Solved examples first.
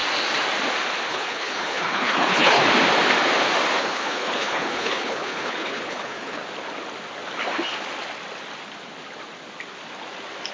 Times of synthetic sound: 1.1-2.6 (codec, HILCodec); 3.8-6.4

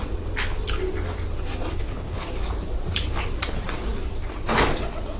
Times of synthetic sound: 1.7-2.2 (codec, HILCodec)